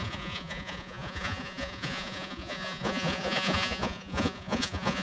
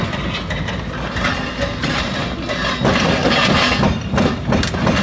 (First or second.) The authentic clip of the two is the second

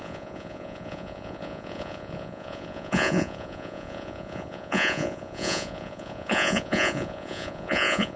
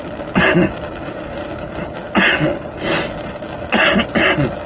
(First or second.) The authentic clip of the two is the second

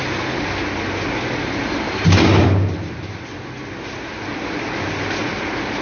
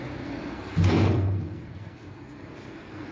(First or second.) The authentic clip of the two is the first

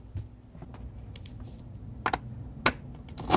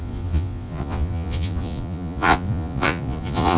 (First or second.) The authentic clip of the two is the first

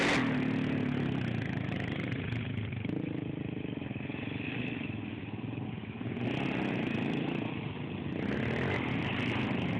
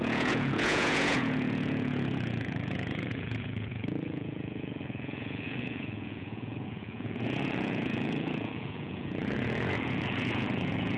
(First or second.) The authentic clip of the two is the first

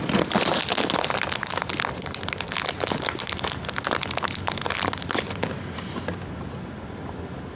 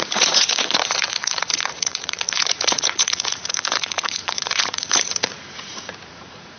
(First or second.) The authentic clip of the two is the first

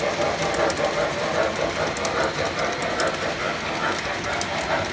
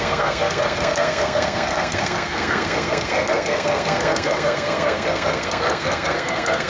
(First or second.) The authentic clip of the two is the first